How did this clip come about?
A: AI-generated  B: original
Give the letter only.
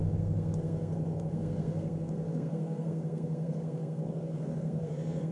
A